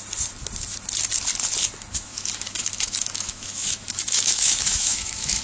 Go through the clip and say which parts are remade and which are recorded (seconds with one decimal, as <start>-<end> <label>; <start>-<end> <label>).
0.0-2.1 recorded; 2.1-5.4 remade